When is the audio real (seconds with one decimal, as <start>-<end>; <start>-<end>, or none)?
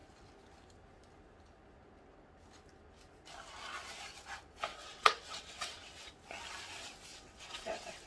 0.0-4.7; 6.1-7.1